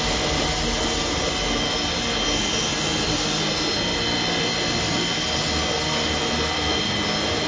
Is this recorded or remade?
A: recorded